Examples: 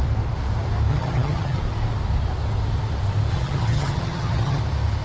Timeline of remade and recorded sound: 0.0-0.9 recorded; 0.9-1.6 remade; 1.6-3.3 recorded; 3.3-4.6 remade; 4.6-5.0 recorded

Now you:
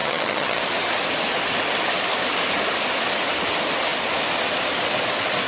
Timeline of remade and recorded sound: 0.0-0.6 remade; 0.6-5.5 recorded

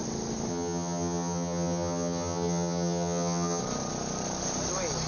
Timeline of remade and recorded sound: 0.0-0.5 recorded; 0.5-3.6 remade; 3.6-5.1 recorded